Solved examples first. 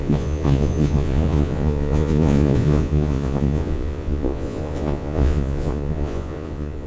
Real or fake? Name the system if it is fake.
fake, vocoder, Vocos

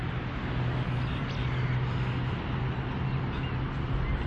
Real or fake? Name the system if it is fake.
real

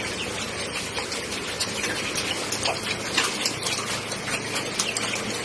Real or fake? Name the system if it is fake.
real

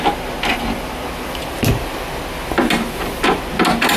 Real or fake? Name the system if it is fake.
real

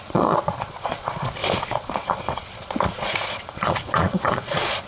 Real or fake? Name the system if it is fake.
fake, vocoder, Vocos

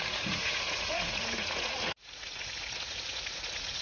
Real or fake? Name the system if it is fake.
fake, vocoder, Vocos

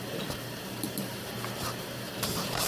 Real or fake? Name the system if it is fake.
fake, vocoder, BigVGAN v2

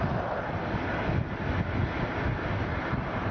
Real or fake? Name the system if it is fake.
real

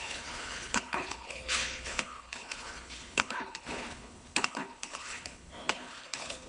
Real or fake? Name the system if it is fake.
fake, codec, HILCodec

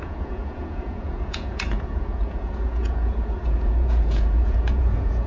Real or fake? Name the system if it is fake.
fake, vocoder, Vocos